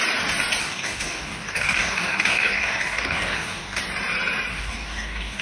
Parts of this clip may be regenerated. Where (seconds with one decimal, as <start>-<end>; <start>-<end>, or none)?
0.6-3.8; 4.5-5.4